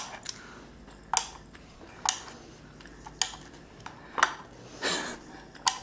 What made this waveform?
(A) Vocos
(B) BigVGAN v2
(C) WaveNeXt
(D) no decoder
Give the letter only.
D